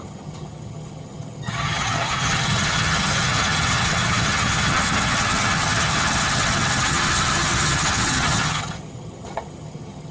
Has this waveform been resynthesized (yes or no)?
yes